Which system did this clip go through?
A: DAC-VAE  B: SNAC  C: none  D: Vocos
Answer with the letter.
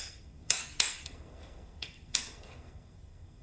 B